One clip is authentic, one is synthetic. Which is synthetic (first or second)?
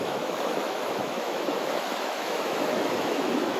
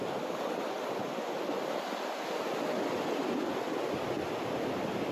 first